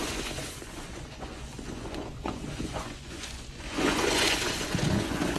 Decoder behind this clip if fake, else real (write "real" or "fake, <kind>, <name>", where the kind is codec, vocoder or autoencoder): fake, vocoder, Vocos